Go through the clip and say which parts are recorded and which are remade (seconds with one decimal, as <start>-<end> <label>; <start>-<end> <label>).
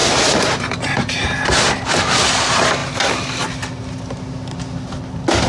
0.0-5.5 recorded